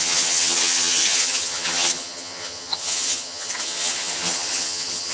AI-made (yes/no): yes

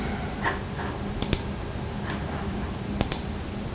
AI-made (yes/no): no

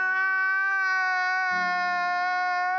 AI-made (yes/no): no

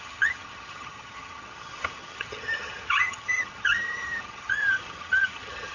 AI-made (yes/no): yes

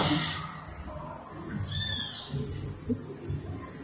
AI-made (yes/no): no